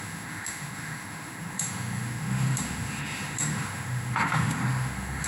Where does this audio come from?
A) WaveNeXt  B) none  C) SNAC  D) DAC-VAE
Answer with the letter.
D